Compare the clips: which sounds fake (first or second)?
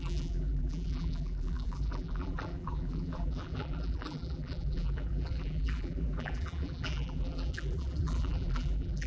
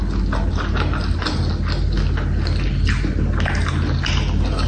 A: first